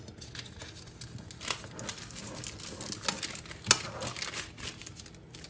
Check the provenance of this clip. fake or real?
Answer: real